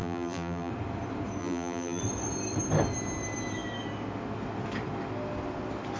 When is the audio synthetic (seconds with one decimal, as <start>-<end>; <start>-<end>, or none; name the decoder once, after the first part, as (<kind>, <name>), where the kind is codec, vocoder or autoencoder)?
0.0-0.7 (vocoder, BigVGAN v2); 1.4-2.0